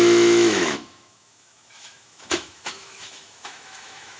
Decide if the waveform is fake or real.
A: fake